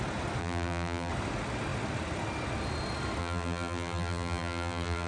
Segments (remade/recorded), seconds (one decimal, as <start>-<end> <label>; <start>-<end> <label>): 0.0-0.4 recorded; 0.4-1.1 remade; 1.1-3.2 recorded; 3.2-5.1 remade